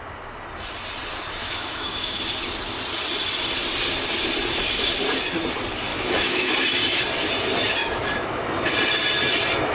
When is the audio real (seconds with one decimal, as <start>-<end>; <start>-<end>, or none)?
0.0-1.4; 2.2-5.9; 6.5-7.8; 8.4-9.7

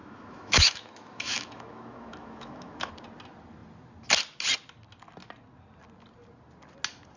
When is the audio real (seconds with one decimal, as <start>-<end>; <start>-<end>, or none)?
2.9-7.2

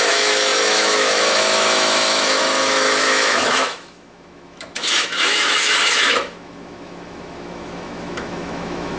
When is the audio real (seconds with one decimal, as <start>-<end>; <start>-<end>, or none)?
none

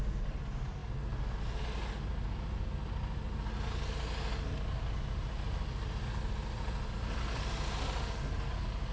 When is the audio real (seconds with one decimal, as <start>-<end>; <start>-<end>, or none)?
0.0-8.9

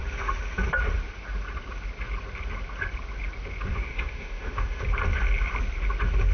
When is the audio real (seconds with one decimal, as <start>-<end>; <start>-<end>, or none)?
0.0-3.7; 4.8-6.3

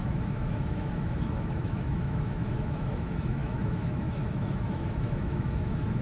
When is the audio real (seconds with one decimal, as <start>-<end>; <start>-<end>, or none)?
none